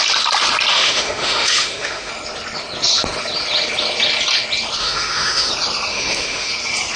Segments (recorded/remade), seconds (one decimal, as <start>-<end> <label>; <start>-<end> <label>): 0.0-0.7 recorded; 0.7-2.1 remade; 2.1-4.8 recorded; 4.8-5.5 remade; 5.5-5.9 recorded; 5.9-6.5 remade; 6.5-7.0 recorded